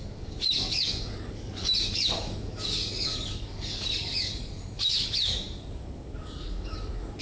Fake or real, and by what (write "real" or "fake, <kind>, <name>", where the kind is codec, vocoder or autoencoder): fake, codec, DAC